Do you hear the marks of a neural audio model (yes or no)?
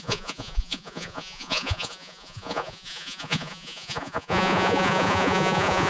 yes